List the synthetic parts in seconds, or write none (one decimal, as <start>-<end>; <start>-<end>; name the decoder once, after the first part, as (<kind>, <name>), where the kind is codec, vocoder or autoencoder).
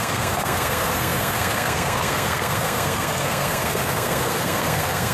0.0-5.1 (codec, SNAC)